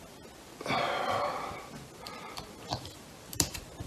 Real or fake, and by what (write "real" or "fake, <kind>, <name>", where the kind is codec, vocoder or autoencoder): real